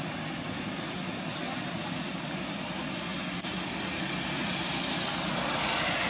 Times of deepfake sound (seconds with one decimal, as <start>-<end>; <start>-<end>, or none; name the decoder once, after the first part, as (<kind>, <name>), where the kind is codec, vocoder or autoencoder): none